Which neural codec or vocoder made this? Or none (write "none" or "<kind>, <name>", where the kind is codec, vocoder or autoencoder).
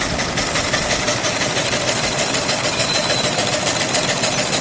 none